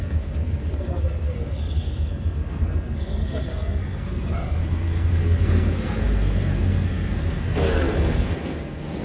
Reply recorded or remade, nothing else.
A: remade